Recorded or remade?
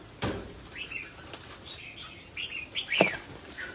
remade